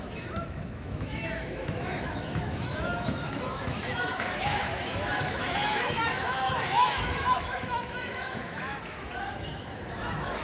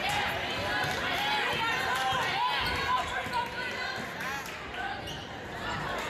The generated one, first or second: first